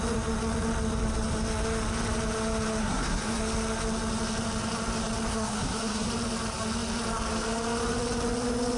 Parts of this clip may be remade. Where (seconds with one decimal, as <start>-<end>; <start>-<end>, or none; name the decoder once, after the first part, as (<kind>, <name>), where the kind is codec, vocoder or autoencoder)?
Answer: 2.8-3.4 (codec, SNAC); 5.3-6.1